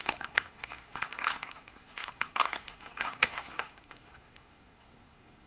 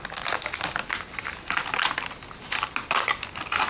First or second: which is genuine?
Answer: second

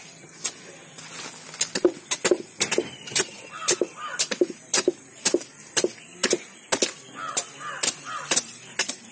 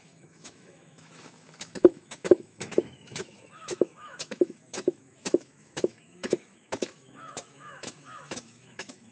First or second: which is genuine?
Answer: first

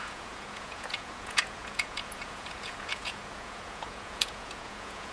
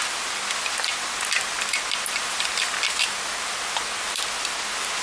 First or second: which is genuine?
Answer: second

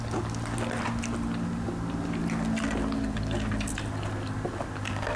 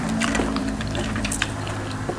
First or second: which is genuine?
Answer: first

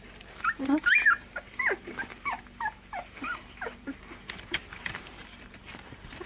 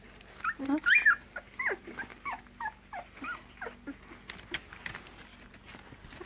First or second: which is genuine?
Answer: second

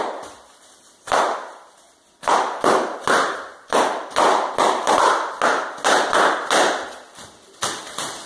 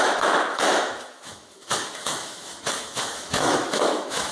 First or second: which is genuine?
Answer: first